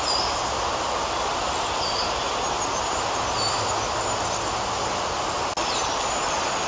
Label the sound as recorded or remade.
recorded